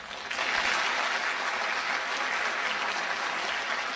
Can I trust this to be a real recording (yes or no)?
yes